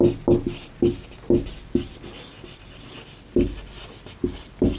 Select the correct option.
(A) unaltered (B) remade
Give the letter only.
A